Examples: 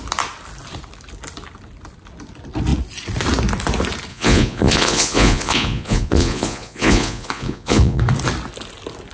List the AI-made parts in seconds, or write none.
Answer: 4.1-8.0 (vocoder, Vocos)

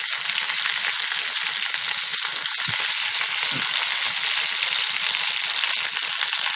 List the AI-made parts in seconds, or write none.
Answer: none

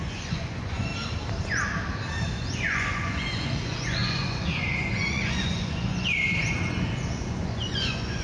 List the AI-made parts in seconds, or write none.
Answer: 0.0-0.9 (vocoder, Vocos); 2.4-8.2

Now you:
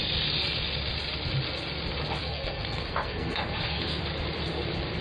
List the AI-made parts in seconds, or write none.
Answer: 2.2-4.0 (codec, SNAC)

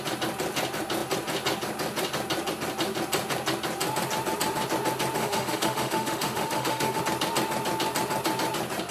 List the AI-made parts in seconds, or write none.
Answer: 5.2-7.0 (autoencoder, DAC-VAE)